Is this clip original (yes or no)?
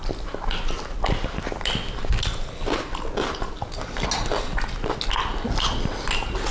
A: yes